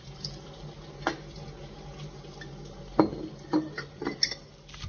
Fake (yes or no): no